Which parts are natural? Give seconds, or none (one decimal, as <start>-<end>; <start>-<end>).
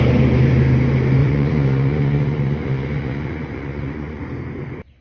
0.0-1.2; 4.2-5.0